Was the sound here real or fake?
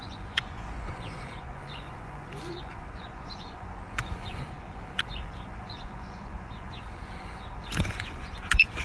fake